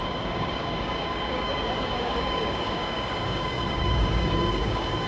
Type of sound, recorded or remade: remade